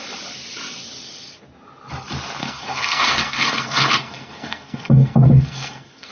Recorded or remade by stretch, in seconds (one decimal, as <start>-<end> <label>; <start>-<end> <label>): 0.0-2.4 recorded; 2.4-6.1 remade

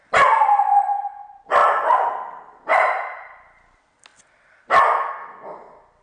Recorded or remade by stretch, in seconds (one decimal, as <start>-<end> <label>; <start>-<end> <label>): 0.0-6.0 recorded

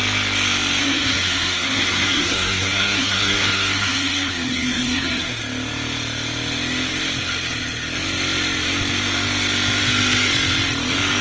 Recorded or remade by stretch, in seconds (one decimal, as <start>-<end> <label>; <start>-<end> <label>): 0.0-0.8 recorded; 0.8-5.4 remade; 5.4-11.2 recorded

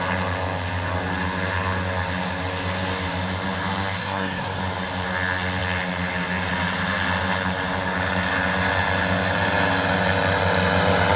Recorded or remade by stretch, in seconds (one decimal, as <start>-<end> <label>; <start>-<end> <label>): 0.0-4.0 recorded; 4.0-4.6 remade; 4.6-11.2 recorded

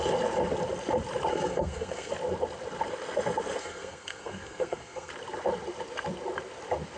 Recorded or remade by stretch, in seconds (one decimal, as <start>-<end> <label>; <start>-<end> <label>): 0.0-1.3 recorded; 1.3-2.1 remade; 2.1-3.6 recorded; 3.6-5.1 remade; 5.1-7.0 recorded

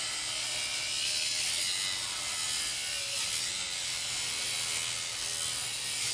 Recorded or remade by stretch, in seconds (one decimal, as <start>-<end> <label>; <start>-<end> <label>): 0.0-6.1 recorded